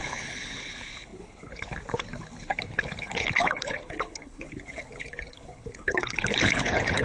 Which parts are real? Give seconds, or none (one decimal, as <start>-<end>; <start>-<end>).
none